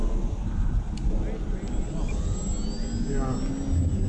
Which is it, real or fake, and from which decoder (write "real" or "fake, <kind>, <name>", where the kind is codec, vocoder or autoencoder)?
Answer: real